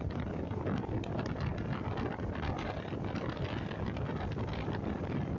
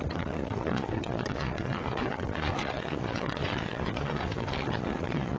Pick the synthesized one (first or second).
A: second